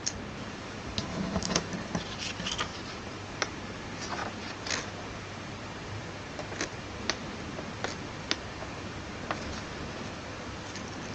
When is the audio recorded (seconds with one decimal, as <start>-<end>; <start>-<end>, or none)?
0.0-1.1; 1.7-11.1